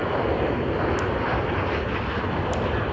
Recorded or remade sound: recorded